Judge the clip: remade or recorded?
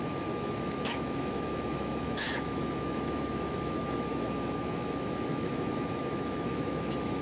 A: remade